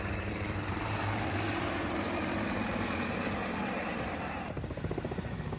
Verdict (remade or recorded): remade